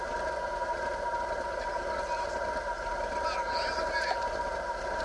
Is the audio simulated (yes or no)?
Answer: no